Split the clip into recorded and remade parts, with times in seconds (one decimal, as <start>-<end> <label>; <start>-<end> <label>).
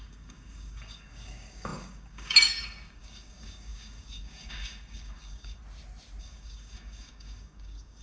0.0-5.6 remade; 5.6-6.2 recorded; 6.2-8.0 remade